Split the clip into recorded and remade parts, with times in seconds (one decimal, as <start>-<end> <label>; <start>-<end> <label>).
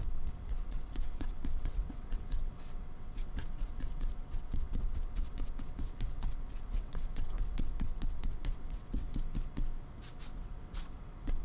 0.0-9.1 remade; 9.1-10.2 recorded; 10.2-11.4 remade